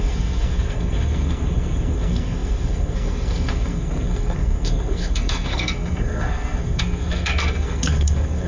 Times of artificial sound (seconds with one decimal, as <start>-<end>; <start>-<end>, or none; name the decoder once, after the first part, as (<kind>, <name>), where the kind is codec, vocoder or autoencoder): 0.0-8.5 (codec, SNAC)